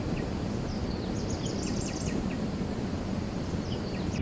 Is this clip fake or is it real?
real